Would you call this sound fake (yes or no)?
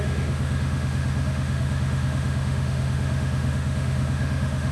yes